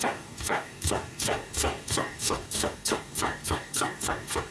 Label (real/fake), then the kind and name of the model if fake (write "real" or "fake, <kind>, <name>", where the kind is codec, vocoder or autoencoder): fake, codec, DAC